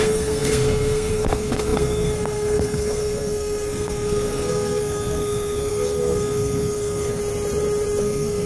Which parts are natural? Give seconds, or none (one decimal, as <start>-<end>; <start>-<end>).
7.2-8.0